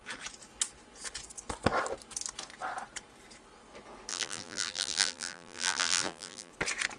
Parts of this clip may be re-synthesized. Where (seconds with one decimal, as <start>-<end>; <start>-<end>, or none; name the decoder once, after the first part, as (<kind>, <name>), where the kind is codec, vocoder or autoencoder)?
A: 4.1-6.5 (vocoder, BigVGAN v2)